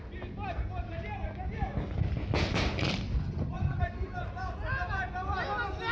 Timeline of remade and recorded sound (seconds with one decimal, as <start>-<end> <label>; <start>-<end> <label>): 0.0-3.2 recorded; 3.2-3.8 remade; 3.8-5.9 recorded

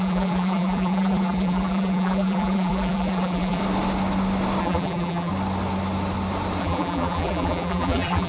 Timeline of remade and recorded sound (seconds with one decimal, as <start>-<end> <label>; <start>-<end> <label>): 0.0-3.6 remade; 3.6-4.6 recorded; 4.6-5.3 remade; 5.3-6.6 recorded; 6.6-8.3 remade

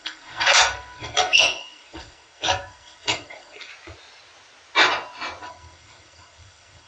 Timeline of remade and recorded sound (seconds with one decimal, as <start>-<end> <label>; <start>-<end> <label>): 0.0-3.7 remade; 3.7-5.4 recorded; 5.4-6.9 remade

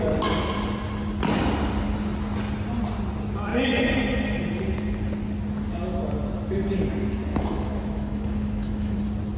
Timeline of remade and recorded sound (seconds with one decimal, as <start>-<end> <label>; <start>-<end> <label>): 0.0-7.3 recorded; 7.3-9.0 remade; 9.0-9.4 recorded

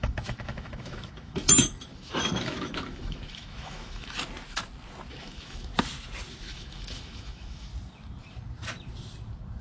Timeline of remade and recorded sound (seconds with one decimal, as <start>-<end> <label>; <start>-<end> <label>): 0.0-4.2 remade; 4.2-5.1 recorded; 5.1-5.7 remade; 5.7-6.3 recorded; 6.3-7.7 remade; 7.7-9.6 recorded

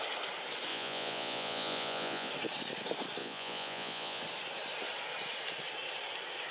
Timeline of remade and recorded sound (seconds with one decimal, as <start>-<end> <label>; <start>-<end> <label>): 0.0-0.7 recorded; 0.7-2.3 remade; 2.3-3.2 recorded; 3.2-4.2 remade; 4.2-6.5 recorded

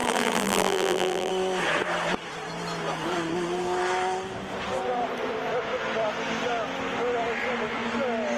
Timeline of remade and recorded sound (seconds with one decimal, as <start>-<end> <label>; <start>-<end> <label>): 0.0-1.3 remade; 1.3-8.4 recorded

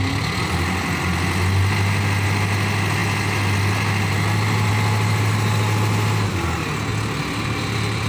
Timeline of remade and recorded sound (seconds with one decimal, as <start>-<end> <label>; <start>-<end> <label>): 0.0-6.9 recorded; 6.9-8.1 remade